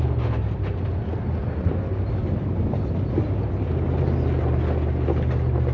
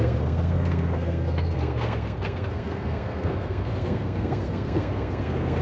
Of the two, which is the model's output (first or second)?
second